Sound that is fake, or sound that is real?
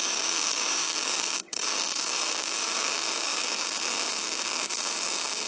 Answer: fake